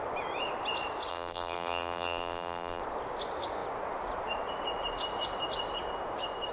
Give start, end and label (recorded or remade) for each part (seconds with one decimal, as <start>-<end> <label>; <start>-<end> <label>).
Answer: 0.0-1.1 recorded; 1.1-2.8 remade; 2.8-6.5 recorded